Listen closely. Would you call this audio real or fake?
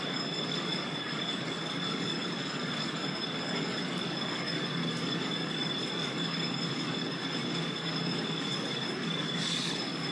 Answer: fake